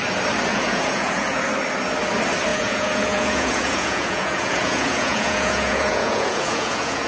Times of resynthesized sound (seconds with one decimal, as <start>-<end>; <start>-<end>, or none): 0.5-1.4; 2.5-7.1